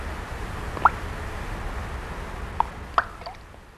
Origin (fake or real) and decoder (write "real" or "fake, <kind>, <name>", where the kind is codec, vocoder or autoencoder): real